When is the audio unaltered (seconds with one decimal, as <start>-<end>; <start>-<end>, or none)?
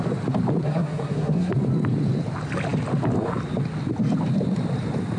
0.0-0.6; 1.5-5.2